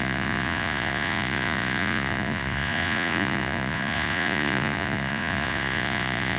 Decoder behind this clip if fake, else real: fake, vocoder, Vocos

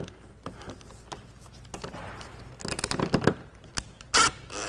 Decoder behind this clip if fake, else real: real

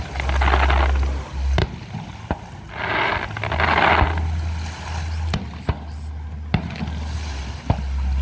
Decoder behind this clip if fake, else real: real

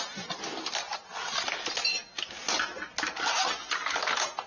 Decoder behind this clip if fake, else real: real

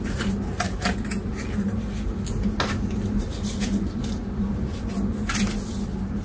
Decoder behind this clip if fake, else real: real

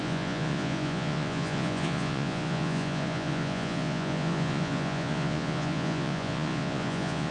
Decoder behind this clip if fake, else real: fake, vocoder, Vocos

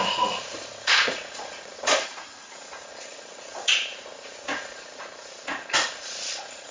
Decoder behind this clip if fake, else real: fake, vocoder, Vocos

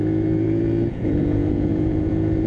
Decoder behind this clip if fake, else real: fake, vocoder, Vocos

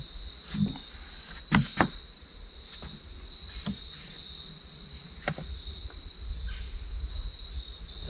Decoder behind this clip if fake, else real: real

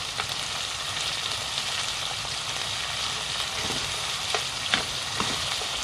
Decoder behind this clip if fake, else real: real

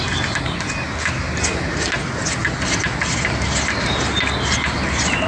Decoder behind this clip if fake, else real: real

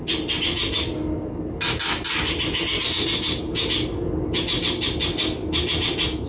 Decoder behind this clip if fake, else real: real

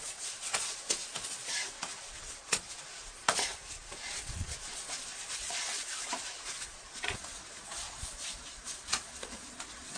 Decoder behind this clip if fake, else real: fake, vocoder, Vocos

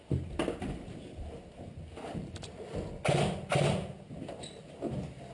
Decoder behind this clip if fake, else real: real